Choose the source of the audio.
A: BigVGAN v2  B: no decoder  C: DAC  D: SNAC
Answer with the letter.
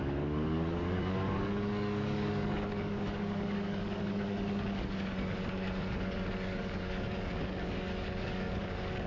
C